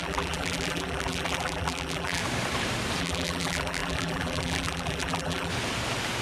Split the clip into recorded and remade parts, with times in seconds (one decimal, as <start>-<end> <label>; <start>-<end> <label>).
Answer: 0.0-2.2 remade; 2.2-3.0 recorded; 3.0-5.5 remade; 5.5-6.2 recorded